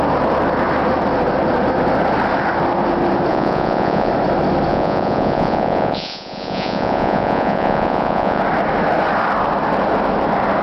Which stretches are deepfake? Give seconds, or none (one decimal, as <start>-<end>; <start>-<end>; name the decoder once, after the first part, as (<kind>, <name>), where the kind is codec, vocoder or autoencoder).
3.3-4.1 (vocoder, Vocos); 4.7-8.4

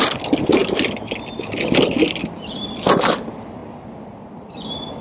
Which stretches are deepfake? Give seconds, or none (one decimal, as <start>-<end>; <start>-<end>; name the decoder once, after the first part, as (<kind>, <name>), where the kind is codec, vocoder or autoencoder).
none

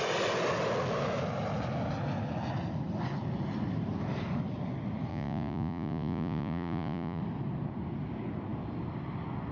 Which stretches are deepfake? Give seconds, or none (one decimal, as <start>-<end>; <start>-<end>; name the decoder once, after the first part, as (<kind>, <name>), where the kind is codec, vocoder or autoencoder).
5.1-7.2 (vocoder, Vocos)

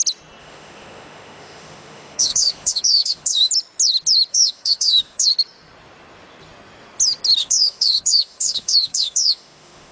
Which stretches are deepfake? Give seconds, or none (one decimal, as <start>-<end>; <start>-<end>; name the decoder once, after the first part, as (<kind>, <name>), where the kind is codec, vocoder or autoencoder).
0.4-3.5 (autoencoder, DAC-VAE); 4.3-5.3; 7.4-9.9

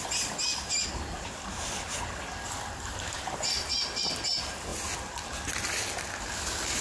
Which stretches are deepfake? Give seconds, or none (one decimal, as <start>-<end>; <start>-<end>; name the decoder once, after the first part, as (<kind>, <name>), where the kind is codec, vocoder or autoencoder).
none

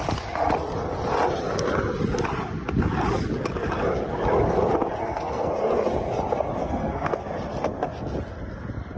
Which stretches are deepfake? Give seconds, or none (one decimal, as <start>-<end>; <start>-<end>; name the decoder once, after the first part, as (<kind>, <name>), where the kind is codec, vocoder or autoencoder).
5.0-5.5 (codec, SNAC); 6.6-7.3

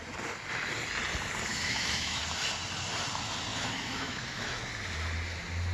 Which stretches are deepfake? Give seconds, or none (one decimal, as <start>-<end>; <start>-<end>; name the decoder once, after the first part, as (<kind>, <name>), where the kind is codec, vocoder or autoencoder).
1.5-2.2 (autoencoder, DAC-VAE); 3.5-4.7

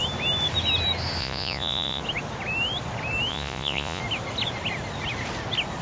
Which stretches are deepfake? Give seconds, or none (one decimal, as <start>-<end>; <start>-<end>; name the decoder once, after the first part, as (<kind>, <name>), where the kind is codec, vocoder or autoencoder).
1.2-2.0 (vocoder, Vocos); 3.3-4.0